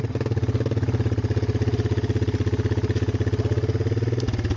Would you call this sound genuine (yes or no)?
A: yes